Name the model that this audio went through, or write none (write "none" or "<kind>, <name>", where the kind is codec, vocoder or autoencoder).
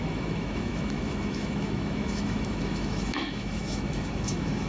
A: autoencoder, DAC-VAE